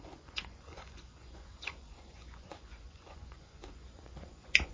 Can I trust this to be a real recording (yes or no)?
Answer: no